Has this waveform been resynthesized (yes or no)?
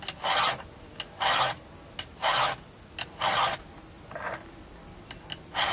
no